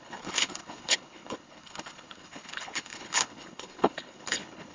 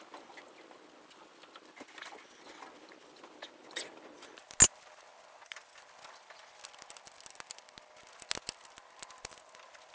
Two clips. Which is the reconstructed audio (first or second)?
first